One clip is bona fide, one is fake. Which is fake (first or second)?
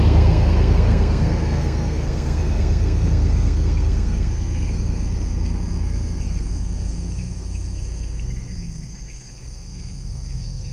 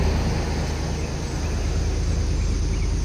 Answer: first